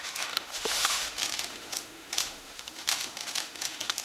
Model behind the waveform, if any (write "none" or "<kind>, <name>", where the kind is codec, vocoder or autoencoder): autoencoder, DAC-VAE